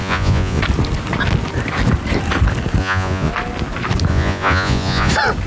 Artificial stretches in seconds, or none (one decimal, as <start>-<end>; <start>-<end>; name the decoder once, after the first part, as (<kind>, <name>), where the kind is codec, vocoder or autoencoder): 0.0-0.6 (vocoder, Vocos); 2.8-3.3; 4.1-5.1